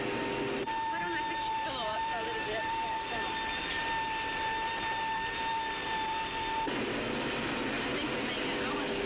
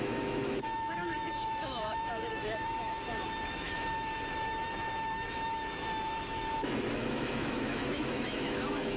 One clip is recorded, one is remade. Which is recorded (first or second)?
first